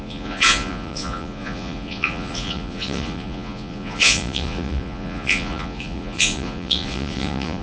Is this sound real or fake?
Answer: fake